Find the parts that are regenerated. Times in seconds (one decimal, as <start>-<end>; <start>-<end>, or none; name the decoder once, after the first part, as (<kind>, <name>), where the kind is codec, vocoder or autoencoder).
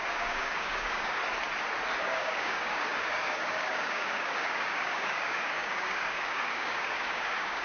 0.0-1.2 (codec, DAC); 2.0-7.6